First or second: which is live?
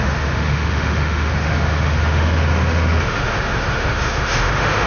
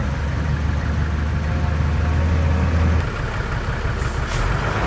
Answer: second